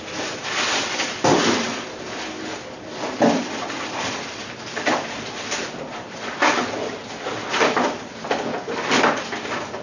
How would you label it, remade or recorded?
recorded